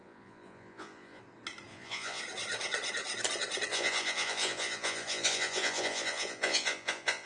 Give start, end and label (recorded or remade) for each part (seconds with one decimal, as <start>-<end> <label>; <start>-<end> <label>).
0.0-1.2 remade; 1.2-1.7 recorded; 1.7-2.2 remade; 2.2-3.7 recorded; 3.7-7.3 remade